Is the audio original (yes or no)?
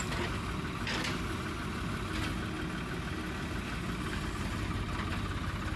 yes